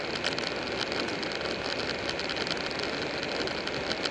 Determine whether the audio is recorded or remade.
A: recorded